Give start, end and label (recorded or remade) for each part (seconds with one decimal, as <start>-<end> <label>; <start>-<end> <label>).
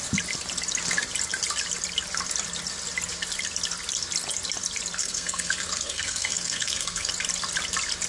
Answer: 0.0-5.0 recorded; 5.0-7.1 remade; 7.1-8.1 recorded